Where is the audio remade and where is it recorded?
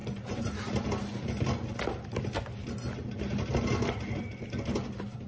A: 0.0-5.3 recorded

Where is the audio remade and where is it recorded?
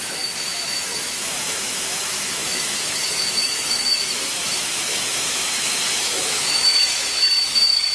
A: 0.0-7.9 remade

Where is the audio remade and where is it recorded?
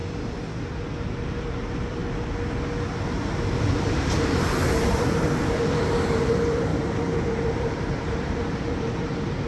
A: 0.0-1.5 recorded; 1.5-2.0 remade; 2.0-3.5 recorded; 3.5-9.5 remade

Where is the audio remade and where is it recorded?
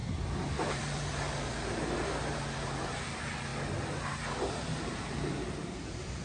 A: 0.0-0.7 recorded; 0.7-3.5 remade; 3.5-4.6 recorded; 4.6-6.2 remade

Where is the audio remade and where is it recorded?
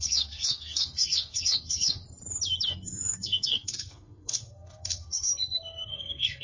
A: 0.0-2.0 remade; 2.0-2.7 recorded; 2.7-5.3 remade; 5.3-5.9 recorded; 5.9-6.4 remade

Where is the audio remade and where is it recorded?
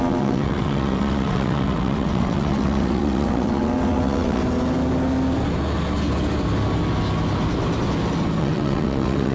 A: 0.0-4.4 remade; 4.4-8.4 recorded; 8.4-9.3 remade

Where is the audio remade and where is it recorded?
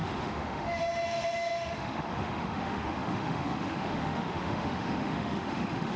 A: 0.0-6.0 remade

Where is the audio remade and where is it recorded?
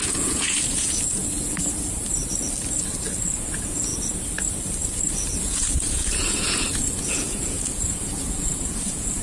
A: 0.0-1.2 remade; 1.2-3.2 recorded; 3.2-3.9 remade; 3.9-5.4 recorded; 5.4-9.2 remade